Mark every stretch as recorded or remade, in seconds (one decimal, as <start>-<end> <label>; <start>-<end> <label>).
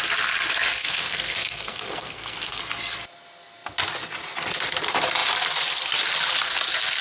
0.0-0.8 recorded; 0.8-2.6 remade; 2.6-7.0 recorded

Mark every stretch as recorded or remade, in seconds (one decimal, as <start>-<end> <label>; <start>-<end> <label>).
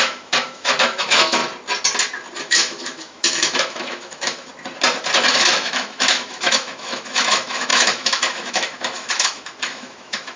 0.0-1.4 remade; 1.4-2.4 recorded; 2.4-4.5 remade; 4.5-5.3 recorded; 5.3-10.4 remade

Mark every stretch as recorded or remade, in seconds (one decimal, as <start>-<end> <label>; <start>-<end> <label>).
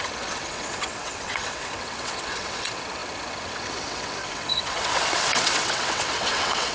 0.0-6.7 remade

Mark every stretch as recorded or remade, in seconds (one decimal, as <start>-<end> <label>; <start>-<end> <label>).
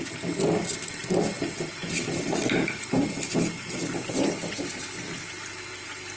0.0-6.2 recorded